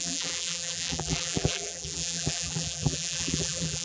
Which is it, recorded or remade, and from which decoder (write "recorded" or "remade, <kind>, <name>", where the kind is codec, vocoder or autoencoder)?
remade, vocoder, BigVGAN v2